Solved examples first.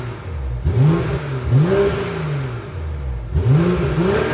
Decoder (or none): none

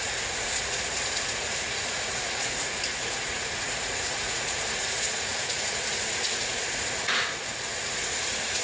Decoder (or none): vocoder, Vocos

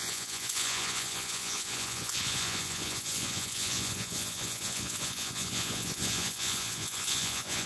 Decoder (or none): vocoder, Vocos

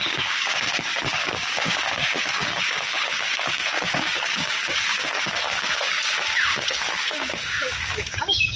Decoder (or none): codec, DAC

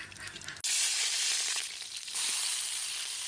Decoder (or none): none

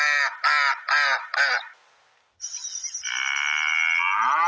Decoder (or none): none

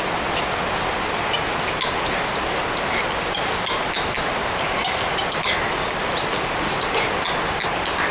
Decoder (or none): none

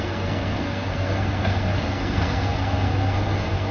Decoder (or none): codec, SNAC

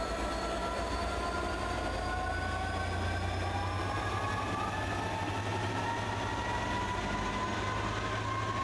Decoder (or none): none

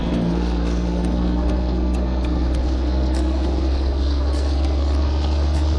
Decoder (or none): codec, SNAC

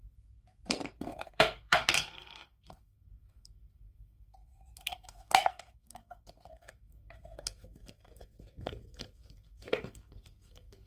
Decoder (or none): codec, SNAC